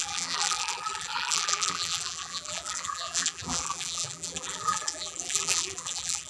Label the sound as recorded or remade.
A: remade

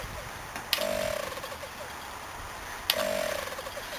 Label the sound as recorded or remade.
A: recorded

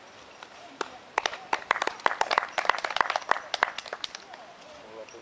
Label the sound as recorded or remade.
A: remade